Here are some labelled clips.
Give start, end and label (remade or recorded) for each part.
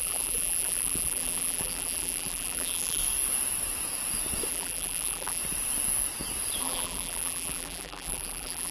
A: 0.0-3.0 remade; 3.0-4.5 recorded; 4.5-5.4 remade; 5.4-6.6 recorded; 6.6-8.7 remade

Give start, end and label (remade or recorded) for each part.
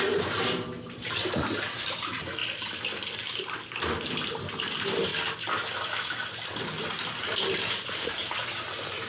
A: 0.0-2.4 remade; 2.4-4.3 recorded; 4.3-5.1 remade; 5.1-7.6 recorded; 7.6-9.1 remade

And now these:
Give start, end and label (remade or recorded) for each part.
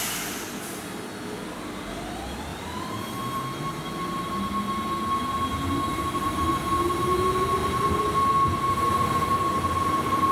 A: 0.0-2.5 recorded; 2.5-4.4 remade; 4.4-5.9 recorded; 5.9-6.6 remade; 6.6-10.3 recorded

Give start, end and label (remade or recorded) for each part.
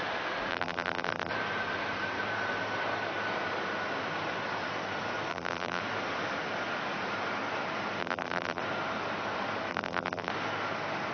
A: 0.0-0.5 recorded; 0.5-1.3 remade; 1.3-5.3 recorded; 5.3-5.8 remade; 5.8-8.0 recorded; 8.0-8.6 remade; 8.6-9.7 recorded; 9.7-10.3 remade; 10.3-11.1 recorded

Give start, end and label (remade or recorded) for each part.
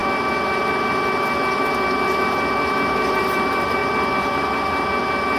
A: 0.0-2.9 recorded; 2.9-3.8 remade; 3.8-5.4 recorded